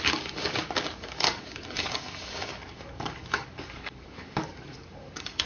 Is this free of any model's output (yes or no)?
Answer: no